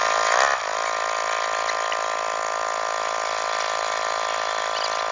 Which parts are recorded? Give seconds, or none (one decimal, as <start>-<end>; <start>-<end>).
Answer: 0.0-5.1